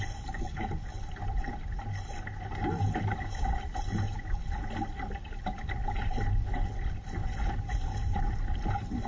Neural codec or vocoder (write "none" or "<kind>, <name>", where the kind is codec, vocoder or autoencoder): none